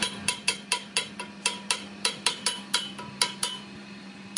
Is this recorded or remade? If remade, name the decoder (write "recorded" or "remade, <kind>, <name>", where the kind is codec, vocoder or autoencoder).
remade, vocoder, BigVGAN v2